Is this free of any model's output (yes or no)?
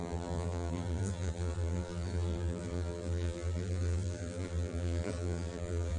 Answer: no